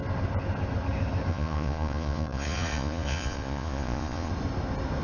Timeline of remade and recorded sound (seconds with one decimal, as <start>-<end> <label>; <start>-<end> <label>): 0.0-1.3 recorded; 1.3-4.3 remade; 4.3-5.0 recorded